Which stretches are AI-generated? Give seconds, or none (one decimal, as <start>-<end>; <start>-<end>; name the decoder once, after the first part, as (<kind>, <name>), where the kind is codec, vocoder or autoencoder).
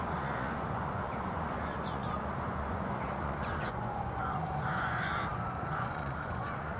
0.0-6.8 (vocoder, Vocos)